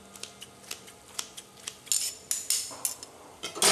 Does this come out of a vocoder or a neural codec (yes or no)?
no